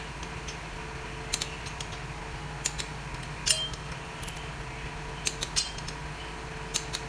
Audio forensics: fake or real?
real